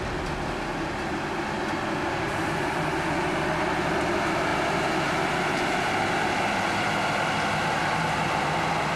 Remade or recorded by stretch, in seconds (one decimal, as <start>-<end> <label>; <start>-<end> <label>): 0.0-9.0 recorded